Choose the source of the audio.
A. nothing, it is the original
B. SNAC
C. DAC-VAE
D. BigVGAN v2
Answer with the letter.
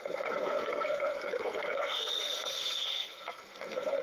B